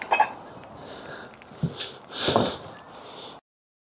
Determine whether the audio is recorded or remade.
recorded